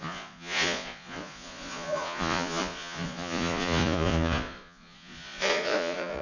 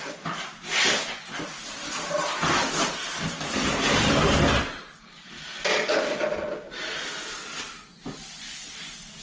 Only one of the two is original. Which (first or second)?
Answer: second